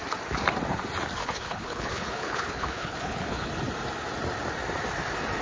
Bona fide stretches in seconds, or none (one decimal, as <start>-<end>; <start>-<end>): 0.0-1.2; 3.5-5.4